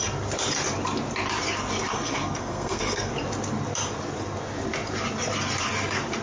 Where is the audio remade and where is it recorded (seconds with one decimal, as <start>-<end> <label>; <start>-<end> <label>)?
0.0-1.9 recorded; 1.9-3.1 remade; 3.1-6.2 recorded